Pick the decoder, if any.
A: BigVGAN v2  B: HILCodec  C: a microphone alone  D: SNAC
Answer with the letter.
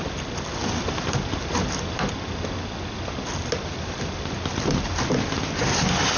C